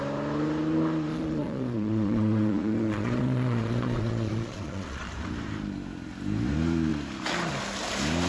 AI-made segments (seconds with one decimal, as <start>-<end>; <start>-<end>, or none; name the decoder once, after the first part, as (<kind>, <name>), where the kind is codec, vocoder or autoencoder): 1.1-5.1 (vocoder, Vocos)